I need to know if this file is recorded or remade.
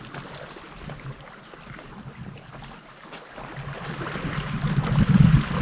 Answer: recorded